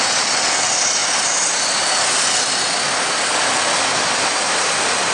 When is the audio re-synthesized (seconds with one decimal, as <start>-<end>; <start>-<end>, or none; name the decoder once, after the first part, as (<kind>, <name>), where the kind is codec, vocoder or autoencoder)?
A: none